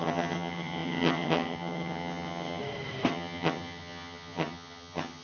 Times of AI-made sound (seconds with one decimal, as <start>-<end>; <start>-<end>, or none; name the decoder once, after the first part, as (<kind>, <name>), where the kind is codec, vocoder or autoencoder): 0.0-2.6 (vocoder, HiFi-GAN); 3.1-5.2